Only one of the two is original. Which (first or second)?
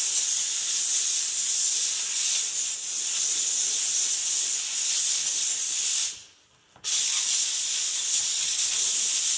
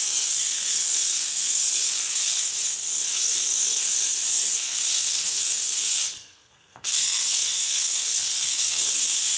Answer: first